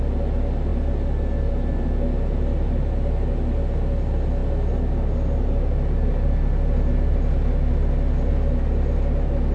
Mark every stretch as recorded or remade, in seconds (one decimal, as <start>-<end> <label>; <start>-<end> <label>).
0.0-9.5 recorded